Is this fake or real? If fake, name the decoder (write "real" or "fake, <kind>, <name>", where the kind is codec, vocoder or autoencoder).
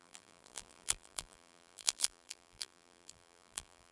fake, vocoder, BigVGAN v2